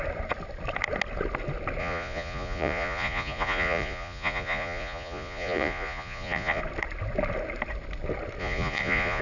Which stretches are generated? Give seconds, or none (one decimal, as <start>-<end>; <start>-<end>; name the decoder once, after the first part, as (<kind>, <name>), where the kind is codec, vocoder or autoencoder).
1.8-6.6 (vocoder, Vocos); 8.4-9.2